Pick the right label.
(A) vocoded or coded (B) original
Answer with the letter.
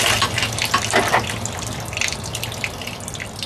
B